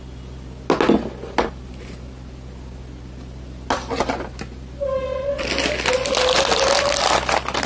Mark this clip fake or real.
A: real